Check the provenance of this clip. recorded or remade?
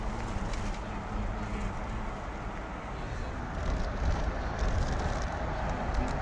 recorded